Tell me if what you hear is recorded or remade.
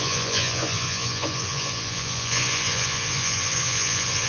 remade